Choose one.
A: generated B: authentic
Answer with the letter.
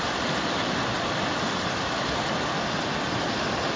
B